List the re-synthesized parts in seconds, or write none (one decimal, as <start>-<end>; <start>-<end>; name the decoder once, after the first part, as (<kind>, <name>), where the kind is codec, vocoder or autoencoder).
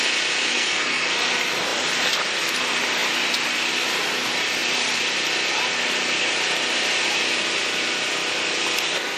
0.5-1.1 (codec, SNAC)